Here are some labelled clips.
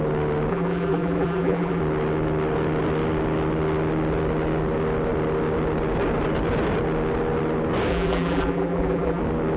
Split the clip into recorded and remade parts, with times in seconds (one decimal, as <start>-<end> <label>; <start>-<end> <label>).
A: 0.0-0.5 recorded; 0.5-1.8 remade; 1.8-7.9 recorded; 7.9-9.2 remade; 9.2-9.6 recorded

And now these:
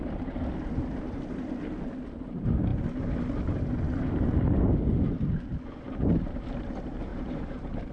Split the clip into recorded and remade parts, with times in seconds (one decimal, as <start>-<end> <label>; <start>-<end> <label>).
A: 0.0-7.1 recorded; 7.1-7.9 remade

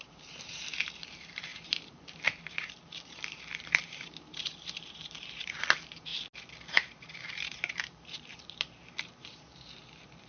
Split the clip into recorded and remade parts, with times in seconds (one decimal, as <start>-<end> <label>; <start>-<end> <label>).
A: 0.0-6.1 remade; 6.1-6.7 recorded; 6.7-10.3 remade

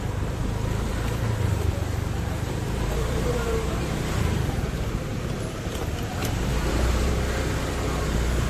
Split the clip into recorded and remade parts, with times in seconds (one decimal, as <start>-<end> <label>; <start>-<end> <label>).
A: 0.0-0.9 recorded; 0.9-5.3 remade; 5.3-6.2 recorded; 6.2-7.1 remade; 7.1-8.5 recorded

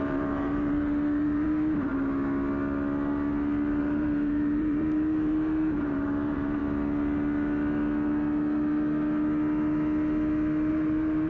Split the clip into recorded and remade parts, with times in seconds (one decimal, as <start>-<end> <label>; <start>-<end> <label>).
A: 0.0-1.9 remade; 1.9-3.8 recorded; 3.8-6.6 remade; 6.6-10.7 recorded; 10.7-11.3 remade

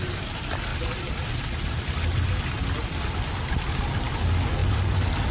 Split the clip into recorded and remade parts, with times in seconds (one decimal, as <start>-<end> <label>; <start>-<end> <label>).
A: 0.0-0.7 recorded; 0.7-3.9 remade; 3.9-4.6 recorded; 4.6-5.3 remade

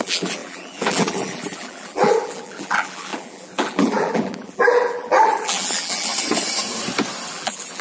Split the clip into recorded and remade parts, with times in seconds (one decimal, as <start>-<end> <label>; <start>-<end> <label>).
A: 0.0-6.1 remade; 6.1-7.3 recorded; 7.3-7.8 remade